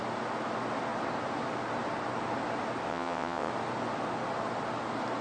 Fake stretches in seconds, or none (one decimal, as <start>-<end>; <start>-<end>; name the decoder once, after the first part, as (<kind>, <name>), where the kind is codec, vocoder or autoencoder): 2.9-3.5 (vocoder, WaveNeXt)